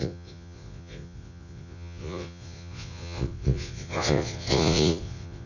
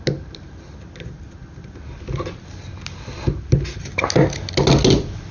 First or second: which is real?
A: second